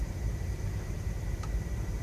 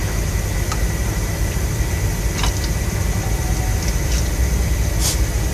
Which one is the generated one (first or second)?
first